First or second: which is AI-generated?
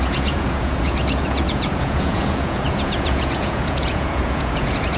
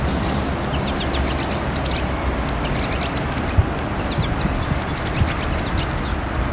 first